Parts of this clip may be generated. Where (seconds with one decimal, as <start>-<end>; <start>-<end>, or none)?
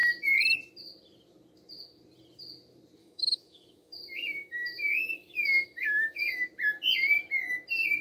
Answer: 3.0-6.4